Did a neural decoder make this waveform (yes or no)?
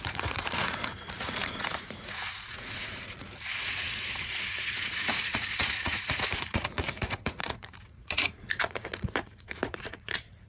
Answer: yes